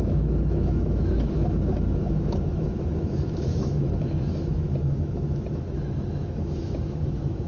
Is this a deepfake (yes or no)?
yes